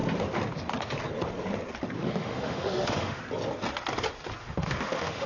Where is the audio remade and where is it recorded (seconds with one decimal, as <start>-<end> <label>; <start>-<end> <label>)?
0.0-2.0 recorded; 2.0-3.2 remade; 3.2-4.4 recorded; 4.4-5.3 remade